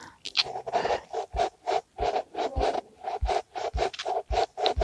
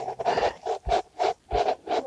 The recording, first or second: first